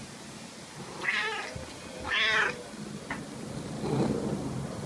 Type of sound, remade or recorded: recorded